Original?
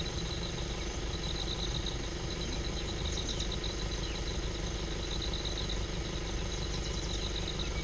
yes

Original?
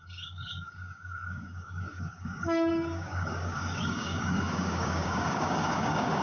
no